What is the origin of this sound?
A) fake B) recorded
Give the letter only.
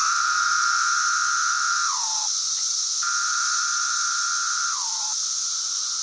A